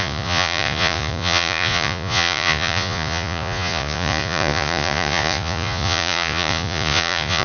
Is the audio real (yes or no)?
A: no